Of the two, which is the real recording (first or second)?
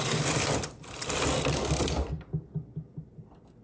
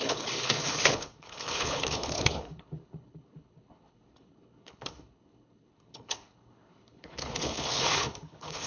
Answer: first